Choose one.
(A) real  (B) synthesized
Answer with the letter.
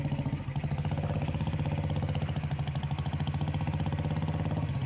A